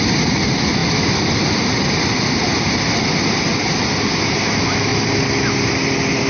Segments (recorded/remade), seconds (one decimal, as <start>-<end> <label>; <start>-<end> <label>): 0.0-6.3 recorded